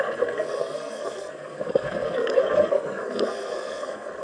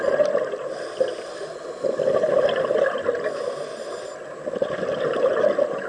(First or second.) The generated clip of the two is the first